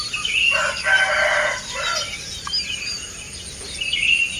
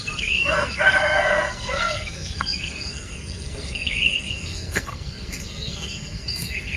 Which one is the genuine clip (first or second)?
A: first